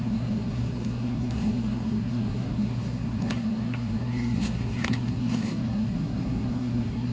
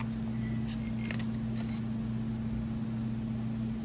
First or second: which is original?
second